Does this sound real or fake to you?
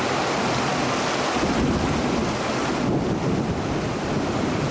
real